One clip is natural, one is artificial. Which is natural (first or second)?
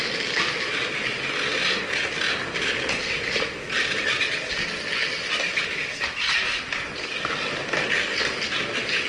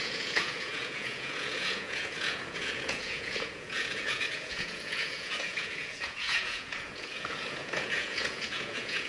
first